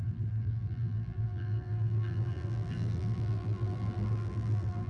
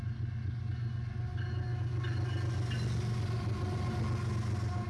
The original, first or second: second